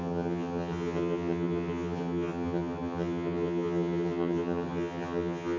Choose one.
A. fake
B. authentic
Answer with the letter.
A